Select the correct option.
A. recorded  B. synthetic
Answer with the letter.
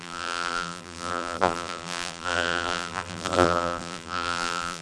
B